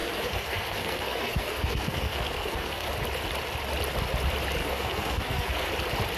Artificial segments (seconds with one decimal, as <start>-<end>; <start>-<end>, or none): 0.0-2.9; 4.6-5.7